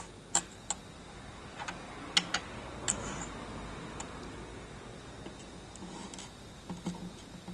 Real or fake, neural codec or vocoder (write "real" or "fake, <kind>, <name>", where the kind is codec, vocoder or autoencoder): real